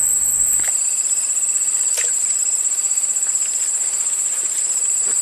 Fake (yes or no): no